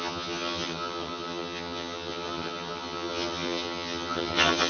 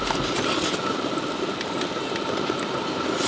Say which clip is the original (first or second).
second